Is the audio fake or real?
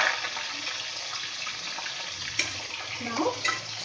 real